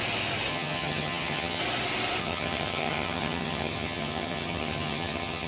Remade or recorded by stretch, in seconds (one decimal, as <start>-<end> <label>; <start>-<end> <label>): 0.0-0.5 recorded; 0.5-1.6 remade; 1.6-2.2 recorded; 2.2-5.5 remade